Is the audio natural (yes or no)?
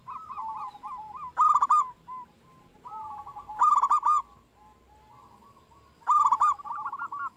yes